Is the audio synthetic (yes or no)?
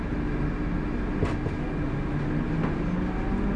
no